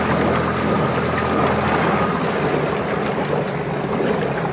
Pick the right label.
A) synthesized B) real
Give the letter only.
B